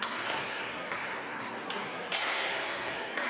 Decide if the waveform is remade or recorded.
remade